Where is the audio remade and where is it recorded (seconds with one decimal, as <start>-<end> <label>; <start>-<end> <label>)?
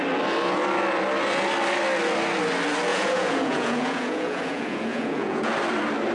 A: 0.0-2.9 recorded; 2.9-5.5 remade; 5.5-6.1 recorded